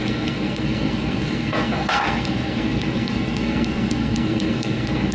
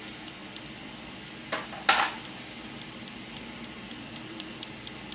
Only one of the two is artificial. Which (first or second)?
first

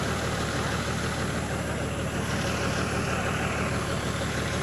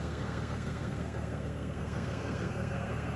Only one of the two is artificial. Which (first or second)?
second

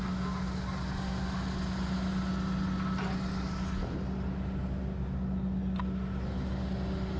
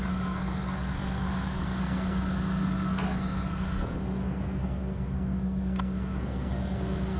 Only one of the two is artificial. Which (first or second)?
second